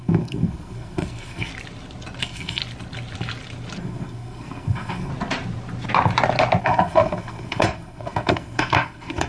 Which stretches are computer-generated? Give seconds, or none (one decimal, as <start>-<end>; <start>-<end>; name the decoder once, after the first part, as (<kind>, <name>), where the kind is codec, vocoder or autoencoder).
0.0-1.5 (codec, SNAC); 2.2-2.6; 3.8-5.1; 6.6-9.3